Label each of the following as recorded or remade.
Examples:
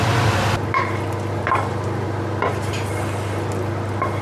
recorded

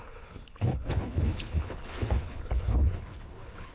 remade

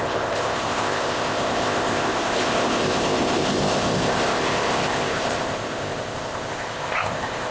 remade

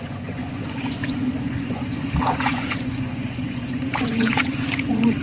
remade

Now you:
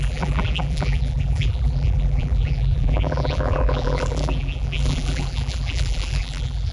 remade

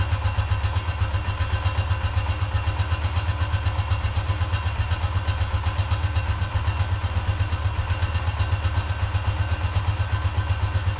recorded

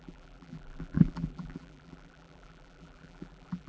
remade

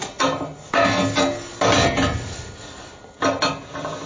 recorded